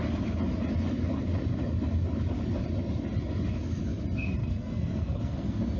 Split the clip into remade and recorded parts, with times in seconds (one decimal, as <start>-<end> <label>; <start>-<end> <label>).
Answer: 0.0-4.4 recorded; 4.4-5.8 remade